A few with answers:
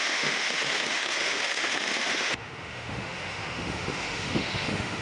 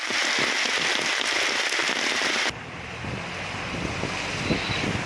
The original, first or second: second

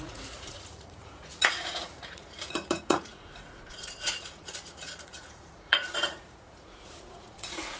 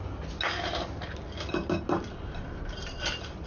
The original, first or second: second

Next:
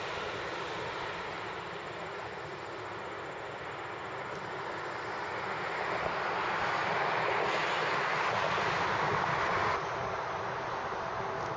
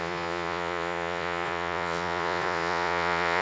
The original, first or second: first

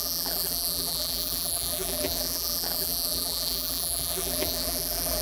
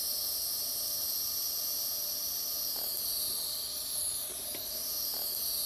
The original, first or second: second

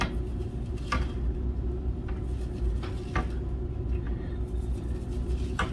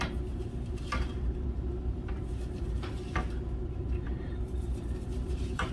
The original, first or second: first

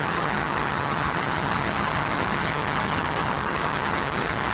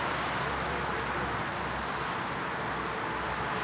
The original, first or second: second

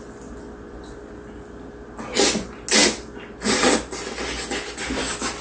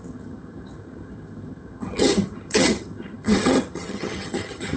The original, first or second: first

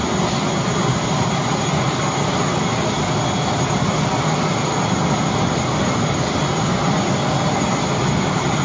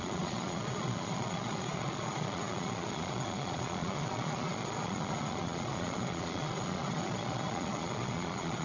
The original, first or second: first